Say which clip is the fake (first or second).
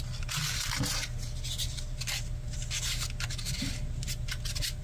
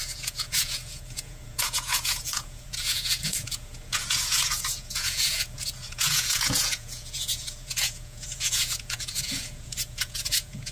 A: second